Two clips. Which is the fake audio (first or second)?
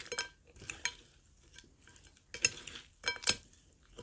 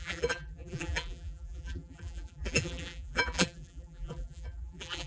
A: second